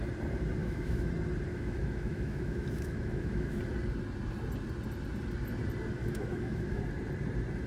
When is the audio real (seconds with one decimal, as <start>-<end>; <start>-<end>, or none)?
0.0-0.6; 1.1-1.5; 3.6-6.0; 6.8-7.7